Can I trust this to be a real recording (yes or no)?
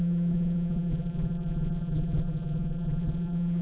no